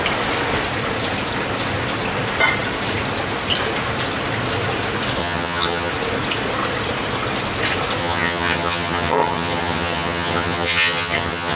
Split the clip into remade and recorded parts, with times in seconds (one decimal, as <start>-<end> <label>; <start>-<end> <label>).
0.0-5.2 recorded; 5.2-5.9 remade; 5.9-8.0 recorded; 8.0-11.6 remade